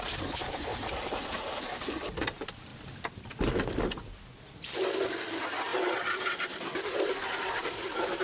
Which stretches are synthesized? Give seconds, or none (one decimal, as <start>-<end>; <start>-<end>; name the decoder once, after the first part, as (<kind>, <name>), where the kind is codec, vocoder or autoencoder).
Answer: 0.0-2.7 (vocoder, BigVGAN v2); 5.0-8.2